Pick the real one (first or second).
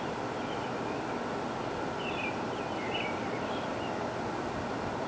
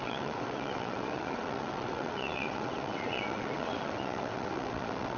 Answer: first